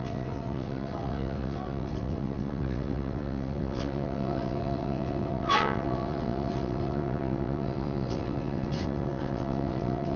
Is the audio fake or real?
fake